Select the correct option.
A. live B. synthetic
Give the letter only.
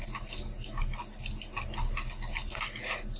A